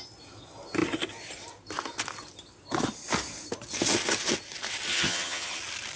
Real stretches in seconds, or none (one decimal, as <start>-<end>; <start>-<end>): 0.0-4.9; 5.6-6.0